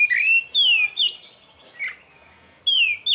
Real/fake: real